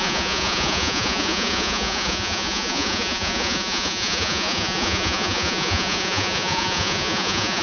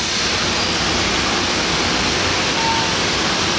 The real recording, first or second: second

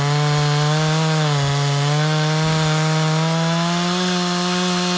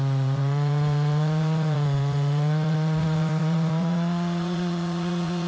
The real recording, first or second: first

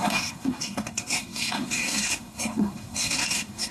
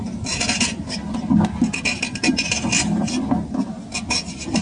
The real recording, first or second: second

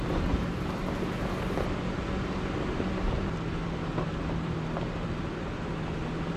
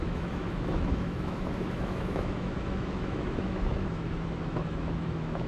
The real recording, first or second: first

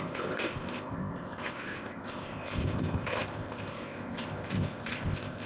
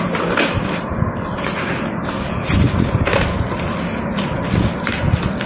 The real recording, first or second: second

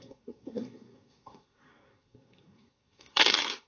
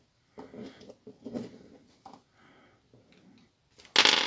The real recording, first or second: second